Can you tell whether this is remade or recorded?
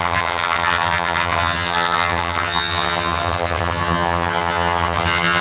remade